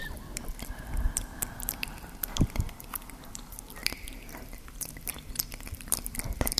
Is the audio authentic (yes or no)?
no